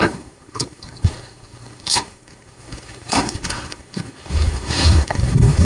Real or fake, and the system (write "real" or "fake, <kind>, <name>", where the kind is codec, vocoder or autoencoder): fake, codec, SNAC